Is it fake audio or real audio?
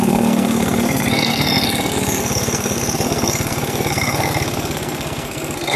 fake